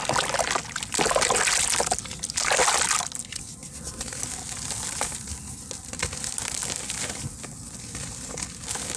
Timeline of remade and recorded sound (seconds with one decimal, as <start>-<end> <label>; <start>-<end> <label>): 0.0-9.0 recorded

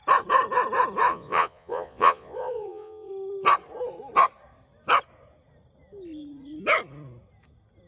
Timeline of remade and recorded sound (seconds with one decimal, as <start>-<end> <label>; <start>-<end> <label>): 0.0-1.1 recorded; 1.1-3.1 remade; 3.1-7.9 recorded

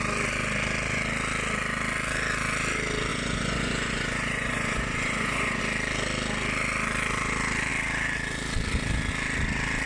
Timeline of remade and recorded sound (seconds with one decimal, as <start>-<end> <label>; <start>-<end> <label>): 0.0-3.1 recorded; 3.1-5.6 remade; 5.6-9.9 recorded

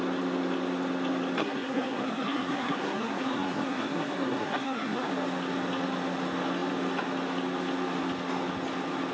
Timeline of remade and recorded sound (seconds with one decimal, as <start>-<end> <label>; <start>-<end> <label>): 0.0-1.4 recorded; 1.4-5.1 remade; 5.1-9.1 recorded

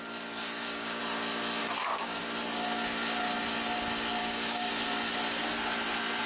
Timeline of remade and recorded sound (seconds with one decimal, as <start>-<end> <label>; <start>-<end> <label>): 0.0-0.4 recorded; 0.4-1.0 remade; 1.0-1.6 recorded; 1.6-2.2 remade; 2.2-4.2 recorded; 4.2-4.7 remade; 4.7-6.3 recorded

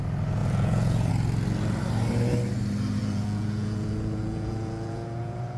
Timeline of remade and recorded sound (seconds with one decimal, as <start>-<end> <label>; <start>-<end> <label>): 0.0-0.4 recorded; 0.4-1.1 remade; 1.1-3.0 recorded; 3.0-5.6 remade

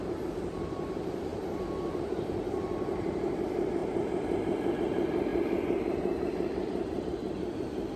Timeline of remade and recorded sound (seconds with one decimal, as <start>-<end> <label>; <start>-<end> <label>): 0.0-8.0 remade